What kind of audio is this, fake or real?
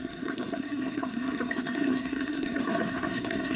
fake